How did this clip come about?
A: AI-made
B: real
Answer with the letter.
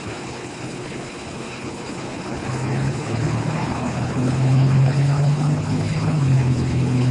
A